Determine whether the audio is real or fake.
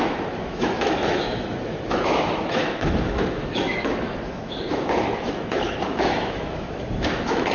fake